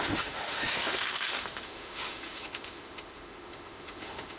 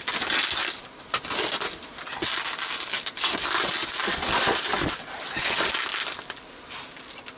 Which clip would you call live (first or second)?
second